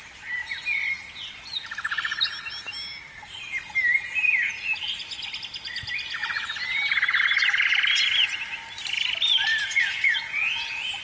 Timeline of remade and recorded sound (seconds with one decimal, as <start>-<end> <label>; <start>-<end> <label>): 0.0-6.2 recorded; 6.2-6.8 remade; 6.8-9.5 recorded; 9.5-11.0 remade